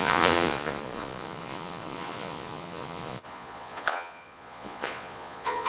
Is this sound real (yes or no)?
no